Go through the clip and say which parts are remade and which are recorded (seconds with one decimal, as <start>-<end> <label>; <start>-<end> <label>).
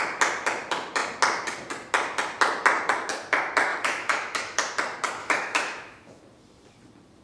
0.0-3.7 recorded; 3.7-4.6 remade; 4.6-5.2 recorded; 5.2-6.2 remade; 6.2-7.2 recorded